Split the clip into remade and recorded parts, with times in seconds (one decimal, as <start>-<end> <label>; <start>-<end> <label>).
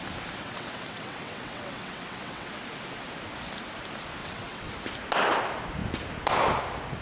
0.0-0.4 recorded; 0.4-2.5 remade; 2.5-4.2 recorded; 4.2-4.7 remade; 4.7-7.0 recorded